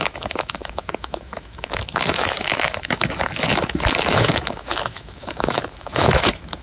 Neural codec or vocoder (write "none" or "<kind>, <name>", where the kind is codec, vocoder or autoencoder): autoencoder, DAC-VAE